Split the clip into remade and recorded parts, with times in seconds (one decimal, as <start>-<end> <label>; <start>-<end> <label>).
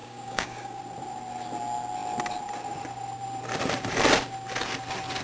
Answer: 0.0-0.8 remade; 0.8-5.2 recorded